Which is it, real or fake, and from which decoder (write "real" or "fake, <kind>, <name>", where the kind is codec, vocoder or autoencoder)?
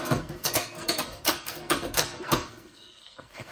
fake, codec, SNAC